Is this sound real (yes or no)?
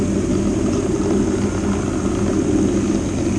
yes